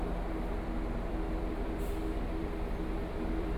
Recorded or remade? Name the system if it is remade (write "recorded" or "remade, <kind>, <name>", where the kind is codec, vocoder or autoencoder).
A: remade, vocoder, BigVGAN v2